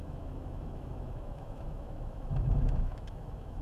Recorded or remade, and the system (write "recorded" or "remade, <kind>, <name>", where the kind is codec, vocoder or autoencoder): remade, autoencoder, DAC-VAE